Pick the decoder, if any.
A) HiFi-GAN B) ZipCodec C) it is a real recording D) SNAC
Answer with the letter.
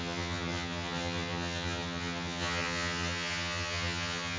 A